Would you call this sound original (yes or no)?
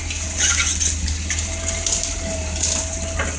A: yes